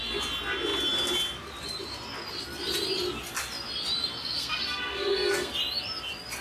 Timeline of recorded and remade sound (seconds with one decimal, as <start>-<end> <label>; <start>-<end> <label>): 0.0-4.2 recorded; 4.2-5.5 remade; 5.5-6.4 recorded

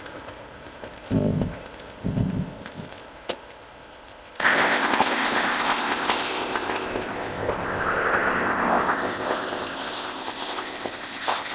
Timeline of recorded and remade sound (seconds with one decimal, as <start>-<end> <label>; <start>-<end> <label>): 0.0-11.5 remade